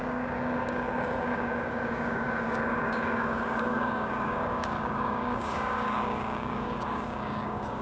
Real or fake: fake